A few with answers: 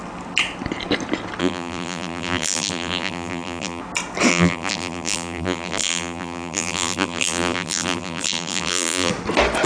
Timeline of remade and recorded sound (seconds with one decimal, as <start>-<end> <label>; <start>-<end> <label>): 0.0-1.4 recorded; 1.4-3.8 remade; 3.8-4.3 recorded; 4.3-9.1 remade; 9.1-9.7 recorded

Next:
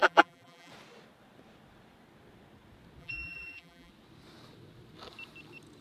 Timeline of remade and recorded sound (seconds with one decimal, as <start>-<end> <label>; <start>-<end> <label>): 0.0-0.7 remade; 0.7-3.0 recorded; 3.0-3.9 remade; 3.9-5.8 recorded

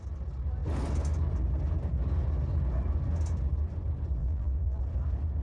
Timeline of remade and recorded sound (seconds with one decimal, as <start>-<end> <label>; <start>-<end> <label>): 0.0-4.2 recorded; 4.2-4.8 remade; 4.8-5.4 recorded

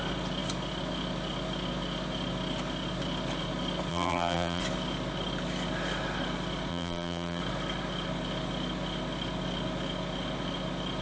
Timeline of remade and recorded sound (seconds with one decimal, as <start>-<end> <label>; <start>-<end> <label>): 0.0-3.9 recorded; 3.9-4.6 remade; 4.6-6.7 recorded; 6.7-7.4 remade; 7.4-11.0 recorded

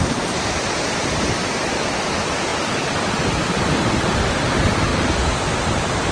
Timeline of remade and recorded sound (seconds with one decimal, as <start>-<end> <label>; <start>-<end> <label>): 0.0-2.5 recorded; 2.5-3.1 remade; 3.1-4.9 recorded; 4.9-5.5 remade; 5.5-6.1 recorded

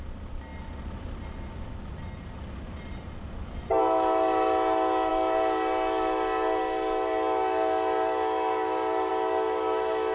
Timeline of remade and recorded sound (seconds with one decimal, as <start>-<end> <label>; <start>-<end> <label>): 0.0-10.1 recorded

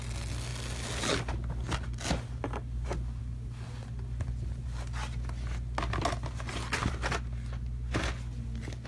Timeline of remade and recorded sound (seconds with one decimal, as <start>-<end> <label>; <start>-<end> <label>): 0.0-8.9 recorded